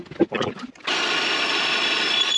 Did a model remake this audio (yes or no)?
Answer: no